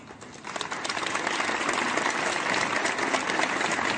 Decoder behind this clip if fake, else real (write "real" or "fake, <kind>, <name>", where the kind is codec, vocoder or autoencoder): real